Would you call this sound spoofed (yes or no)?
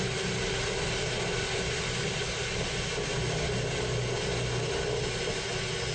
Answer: no